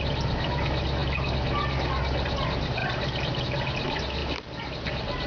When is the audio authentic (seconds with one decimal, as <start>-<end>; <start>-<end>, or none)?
0.0-2.8; 3.4-4.2; 4.7-5.3